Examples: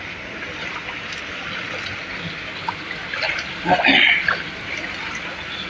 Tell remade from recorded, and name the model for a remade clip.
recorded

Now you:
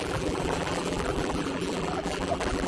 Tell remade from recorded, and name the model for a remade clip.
remade, vocoder, BigVGAN v2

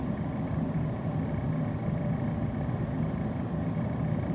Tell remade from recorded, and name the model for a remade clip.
recorded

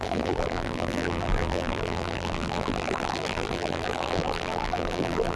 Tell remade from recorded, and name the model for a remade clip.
remade, vocoder, BigVGAN v2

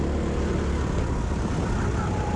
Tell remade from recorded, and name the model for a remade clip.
recorded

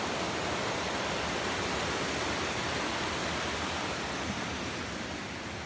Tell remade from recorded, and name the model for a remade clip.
recorded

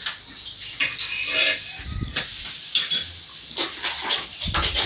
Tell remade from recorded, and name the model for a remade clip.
recorded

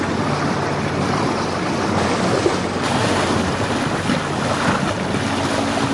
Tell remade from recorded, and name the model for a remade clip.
recorded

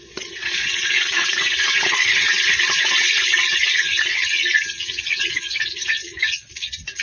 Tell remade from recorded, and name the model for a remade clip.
remade, vocoder, Vocos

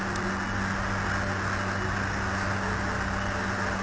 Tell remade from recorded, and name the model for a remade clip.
recorded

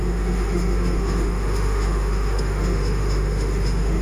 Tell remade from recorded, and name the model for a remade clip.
remade, autoencoder, DAC-VAE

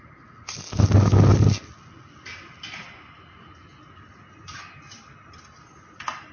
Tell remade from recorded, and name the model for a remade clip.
recorded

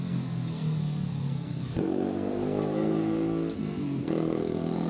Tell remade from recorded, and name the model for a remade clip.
remade, codec, SNAC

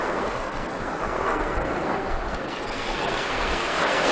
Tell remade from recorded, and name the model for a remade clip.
remade, codec, SNAC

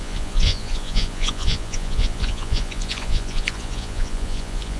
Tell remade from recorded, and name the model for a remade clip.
remade, vocoder, Vocos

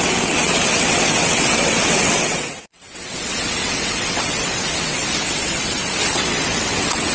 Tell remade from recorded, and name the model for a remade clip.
remade, vocoder, WaveNeXt